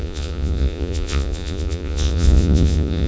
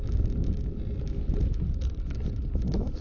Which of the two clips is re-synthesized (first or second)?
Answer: first